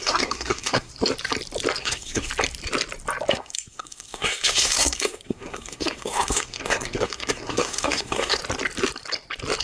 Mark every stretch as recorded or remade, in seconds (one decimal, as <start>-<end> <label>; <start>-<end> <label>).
0.0-0.9 remade; 0.9-1.8 recorded; 1.8-2.3 remade; 2.3-3.3 recorded; 3.3-8.4 remade; 8.4-9.6 recorded